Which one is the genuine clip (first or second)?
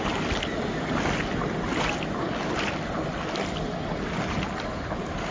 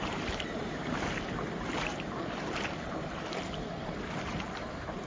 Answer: first